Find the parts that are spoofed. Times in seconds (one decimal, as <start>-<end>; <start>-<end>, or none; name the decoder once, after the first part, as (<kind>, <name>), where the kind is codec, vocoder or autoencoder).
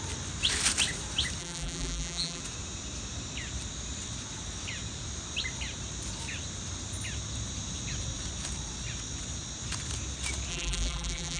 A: 1.4-2.4 (vocoder, BigVGAN v2); 10.5-11.4